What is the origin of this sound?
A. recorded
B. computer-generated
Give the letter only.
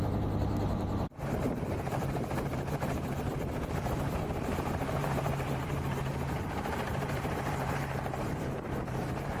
B